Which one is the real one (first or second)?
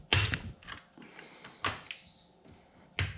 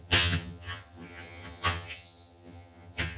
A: first